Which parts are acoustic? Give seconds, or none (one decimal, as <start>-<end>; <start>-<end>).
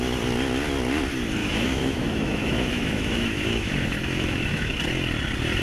0.0-1.4; 4.8-5.6